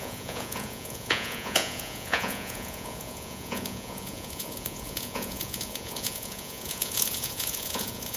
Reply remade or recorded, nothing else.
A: remade